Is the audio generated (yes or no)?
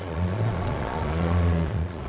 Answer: yes